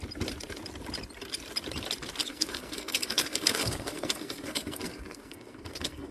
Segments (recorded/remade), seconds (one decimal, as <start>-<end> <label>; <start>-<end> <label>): 0.0-2.2 recorded; 2.2-6.1 remade